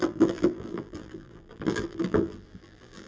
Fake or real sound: fake